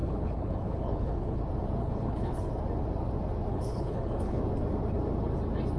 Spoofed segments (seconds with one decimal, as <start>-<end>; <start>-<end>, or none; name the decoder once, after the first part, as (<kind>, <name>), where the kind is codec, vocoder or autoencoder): 0.0-1.4 (codec, HILCodec); 1.8-2.5; 3.5-4.4